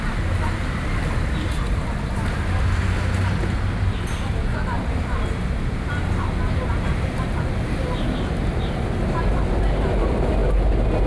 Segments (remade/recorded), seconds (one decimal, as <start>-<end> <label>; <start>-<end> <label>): 0.0-11.1 recorded